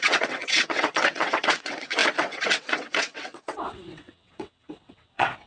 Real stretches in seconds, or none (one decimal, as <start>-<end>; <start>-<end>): none